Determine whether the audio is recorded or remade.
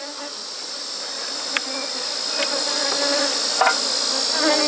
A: recorded